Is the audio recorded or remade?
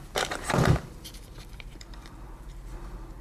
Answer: remade